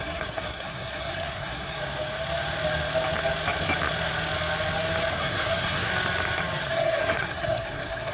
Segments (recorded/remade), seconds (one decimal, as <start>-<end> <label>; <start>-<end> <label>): 0.0-1.8 remade; 1.8-5.1 recorded; 5.1-5.9 remade; 5.9-6.7 recorded; 6.7-8.1 remade